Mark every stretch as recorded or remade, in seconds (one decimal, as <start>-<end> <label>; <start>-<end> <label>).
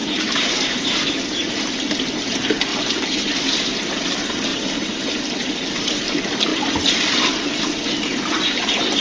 0.0-1.0 remade; 1.0-2.7 recorded; 2.7-3.5 remade; 3.5-4.5 recorded; 4.5-5.1 remade; 5.1-9.0 recorded